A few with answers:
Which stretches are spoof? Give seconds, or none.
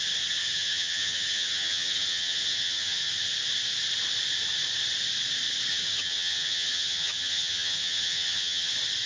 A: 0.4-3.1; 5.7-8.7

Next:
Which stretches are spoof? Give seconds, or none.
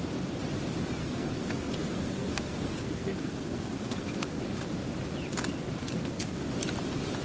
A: 1.0-4.4; 5.8-6.4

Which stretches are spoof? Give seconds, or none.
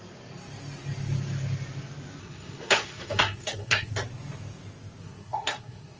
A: 2.2-3.9; 5.0-6.0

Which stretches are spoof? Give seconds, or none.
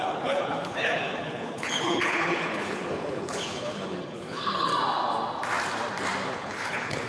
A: 0.0-4.7; 6.3-7.1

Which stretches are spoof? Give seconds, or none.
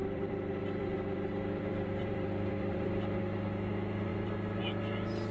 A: 0.0-3.2